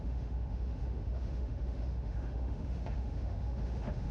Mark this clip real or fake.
fake